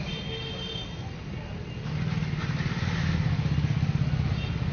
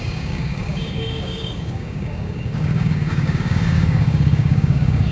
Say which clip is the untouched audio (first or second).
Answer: first